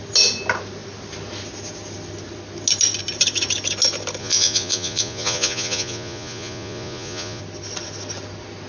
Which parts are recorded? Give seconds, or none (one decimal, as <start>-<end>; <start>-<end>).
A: 0.0-4.2; 7.4-8.7